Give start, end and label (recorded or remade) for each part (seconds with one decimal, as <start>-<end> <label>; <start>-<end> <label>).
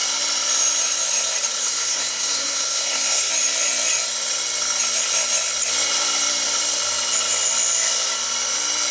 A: 0.0-1.6 recorded; 1.6-3.3 remade; 3.3-8.9 recorded